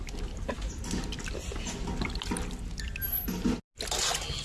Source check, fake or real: real